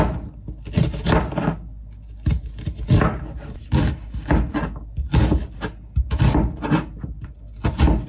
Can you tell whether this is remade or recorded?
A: recorded